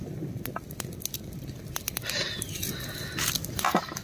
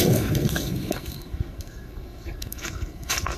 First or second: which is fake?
second